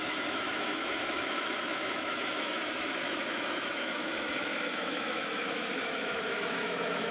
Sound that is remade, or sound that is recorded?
remade